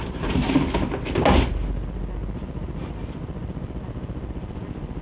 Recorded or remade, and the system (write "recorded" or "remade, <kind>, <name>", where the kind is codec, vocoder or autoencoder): recorded